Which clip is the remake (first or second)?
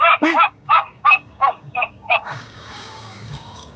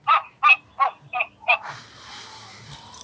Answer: first